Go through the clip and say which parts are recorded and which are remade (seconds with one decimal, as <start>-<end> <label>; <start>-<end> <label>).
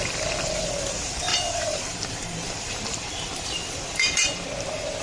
0.0-5.0 remade